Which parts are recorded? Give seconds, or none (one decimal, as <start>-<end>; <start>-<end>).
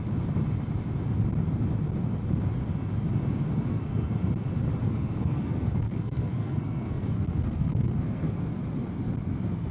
0.0-3.7; 4.3-4.8; 8.4-9.7